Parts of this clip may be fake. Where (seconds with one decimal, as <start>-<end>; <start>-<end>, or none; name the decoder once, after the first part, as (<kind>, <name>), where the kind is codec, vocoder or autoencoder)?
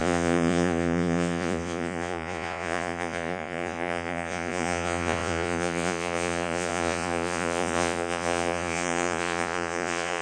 0.0-10.2 (vocoder, Vocos)